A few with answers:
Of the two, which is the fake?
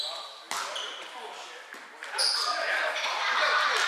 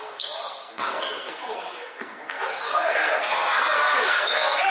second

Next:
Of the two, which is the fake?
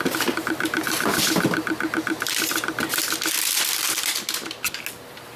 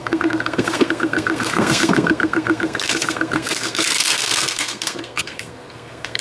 second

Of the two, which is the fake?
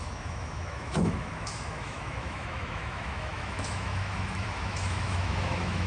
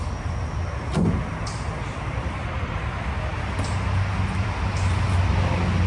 first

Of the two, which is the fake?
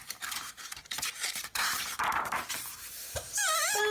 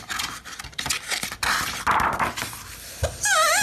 first